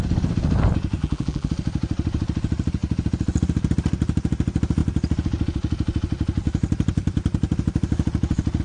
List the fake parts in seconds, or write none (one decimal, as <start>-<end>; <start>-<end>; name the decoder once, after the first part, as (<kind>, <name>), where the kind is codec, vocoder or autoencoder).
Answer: 1.0-1.5 (vocoder, BigVGAN v2)